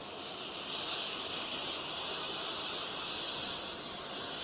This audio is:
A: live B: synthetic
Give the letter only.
A